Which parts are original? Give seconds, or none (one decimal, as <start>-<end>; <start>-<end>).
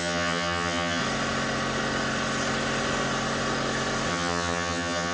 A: 1.0-4.1